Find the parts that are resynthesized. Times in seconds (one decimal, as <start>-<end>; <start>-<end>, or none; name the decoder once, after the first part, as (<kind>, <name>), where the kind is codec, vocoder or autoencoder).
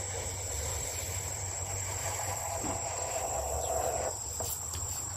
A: 0.7-1.5 (vocoder, BigVGAN v2); 1.9-4.5